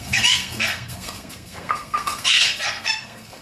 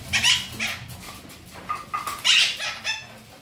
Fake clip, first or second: first